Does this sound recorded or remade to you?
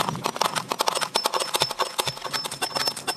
recorded